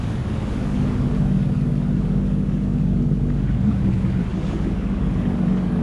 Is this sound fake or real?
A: fake